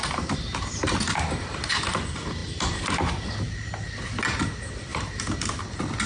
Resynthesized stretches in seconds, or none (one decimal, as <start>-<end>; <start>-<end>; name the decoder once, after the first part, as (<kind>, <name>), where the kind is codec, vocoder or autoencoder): 0.0-1.0 (vocoder, BigVGAN v2); 4.9-5.6